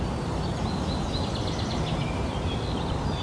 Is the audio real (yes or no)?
yes